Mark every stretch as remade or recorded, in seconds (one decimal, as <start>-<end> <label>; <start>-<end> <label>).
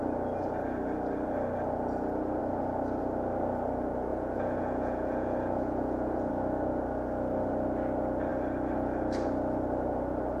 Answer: 0.0-4.1 recorded; 4.1-6.3 remade; 6.3-10.4 recorded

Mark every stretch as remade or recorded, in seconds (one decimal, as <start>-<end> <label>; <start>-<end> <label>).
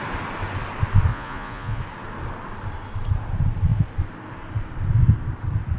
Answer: 0.0-1.1 recorded; 1.1-1.8 remade; 1.8-5.8 recorded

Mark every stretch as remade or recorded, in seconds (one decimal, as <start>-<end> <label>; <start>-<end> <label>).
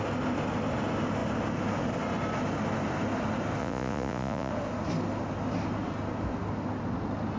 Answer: 0.0-3.6 recorded; 3.6-4.5 remade; 4.5-7.4 recorded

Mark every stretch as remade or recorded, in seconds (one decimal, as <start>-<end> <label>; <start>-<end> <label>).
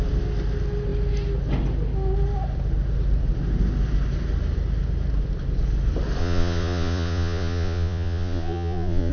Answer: 0.0-6.2 recorded; 6.2-9.1 remade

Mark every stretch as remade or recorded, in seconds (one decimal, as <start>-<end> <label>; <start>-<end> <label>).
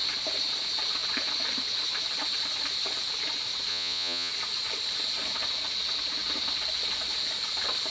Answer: 0.0-3.7 recorded; 3.7-4.3 remade; 4.3-7.9 recorded